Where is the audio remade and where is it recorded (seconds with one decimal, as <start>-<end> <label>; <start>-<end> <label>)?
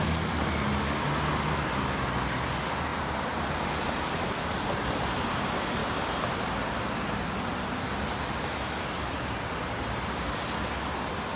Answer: 0.0-11.4 recorded